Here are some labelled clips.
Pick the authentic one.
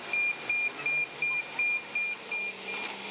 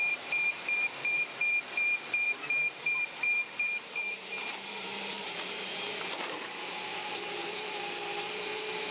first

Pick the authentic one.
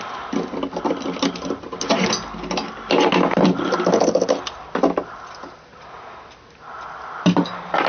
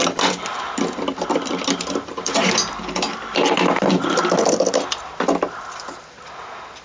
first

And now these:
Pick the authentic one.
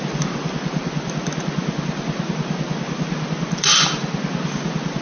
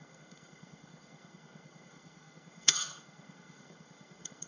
first